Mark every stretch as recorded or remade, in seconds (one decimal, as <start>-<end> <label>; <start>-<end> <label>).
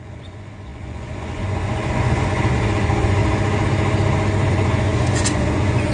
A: 0.0-3.2 remade; 3.2-4.5 recorded; 4.5-5.9 remade